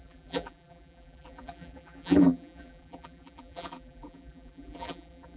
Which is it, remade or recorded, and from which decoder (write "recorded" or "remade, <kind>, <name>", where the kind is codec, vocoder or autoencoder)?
remade, vocoder, BigVGAN v2